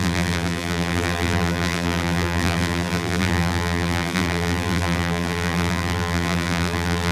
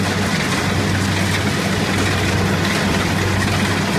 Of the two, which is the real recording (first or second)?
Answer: second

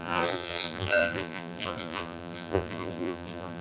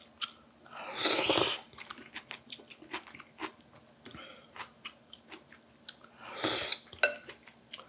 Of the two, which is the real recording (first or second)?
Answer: second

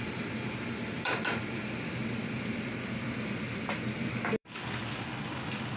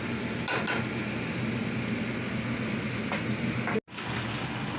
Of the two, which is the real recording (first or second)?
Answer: second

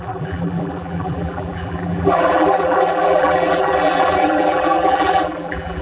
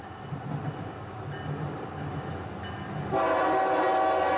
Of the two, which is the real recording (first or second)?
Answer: second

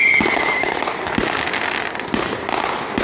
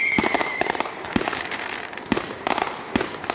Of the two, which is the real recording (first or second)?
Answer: first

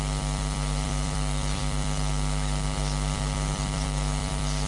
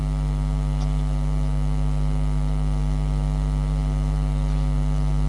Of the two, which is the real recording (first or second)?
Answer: second